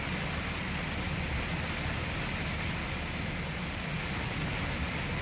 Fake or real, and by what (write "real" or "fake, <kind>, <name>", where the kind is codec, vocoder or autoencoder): real